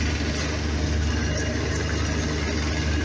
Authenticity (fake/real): real